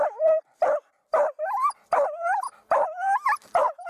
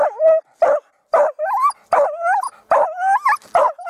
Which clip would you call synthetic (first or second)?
first